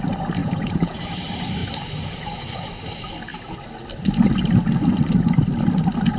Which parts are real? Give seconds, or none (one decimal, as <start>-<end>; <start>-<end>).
0.0-0.4; 1.0-6.2

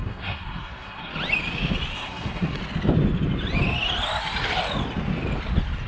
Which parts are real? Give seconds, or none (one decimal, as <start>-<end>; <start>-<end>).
1.1-1.9; 2.6-5.9

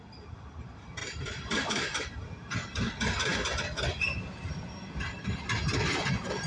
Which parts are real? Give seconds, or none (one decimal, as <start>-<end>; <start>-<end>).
0.0-1.0; 2.1-6.5

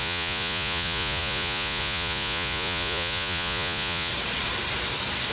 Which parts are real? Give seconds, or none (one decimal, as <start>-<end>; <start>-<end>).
4.1-5.3

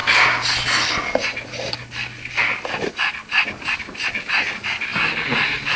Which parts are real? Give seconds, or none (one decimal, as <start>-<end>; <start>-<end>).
0.0-5.8

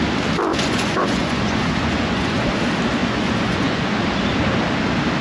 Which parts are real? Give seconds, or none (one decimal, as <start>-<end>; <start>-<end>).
0.0-0.5; 2.5-3.0; 4.0-5.2